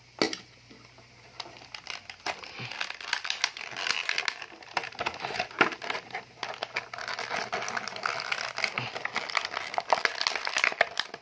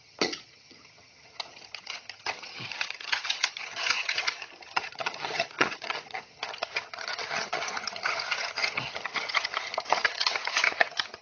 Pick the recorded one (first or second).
first